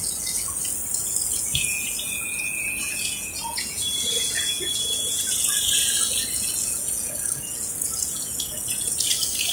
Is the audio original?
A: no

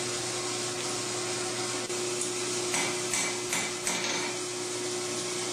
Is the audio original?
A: yes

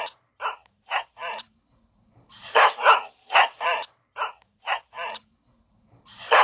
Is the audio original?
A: no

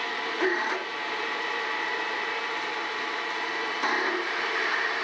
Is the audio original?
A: no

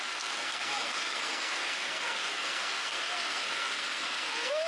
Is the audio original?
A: no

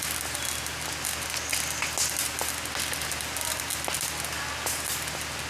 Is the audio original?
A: yes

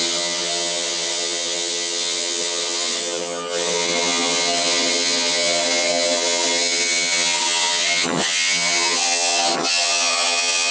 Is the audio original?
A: no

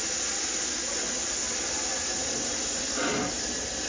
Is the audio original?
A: yes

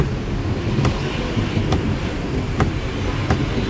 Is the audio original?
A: yes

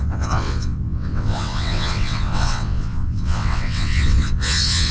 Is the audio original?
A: no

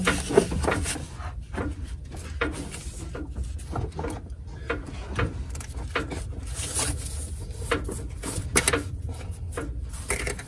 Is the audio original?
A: yes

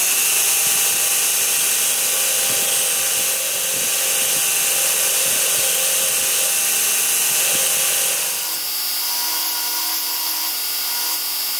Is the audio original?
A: yes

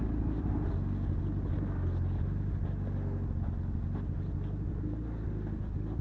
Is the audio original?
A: yes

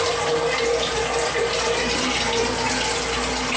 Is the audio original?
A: yes